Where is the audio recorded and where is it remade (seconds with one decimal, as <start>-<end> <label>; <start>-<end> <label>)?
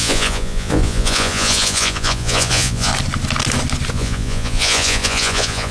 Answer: 0.0-2.9 remade; 2.9-3.9 recorded; 3.9-5.7 remade